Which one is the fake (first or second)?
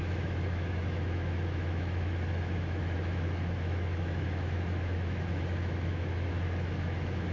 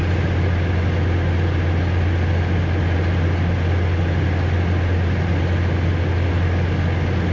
first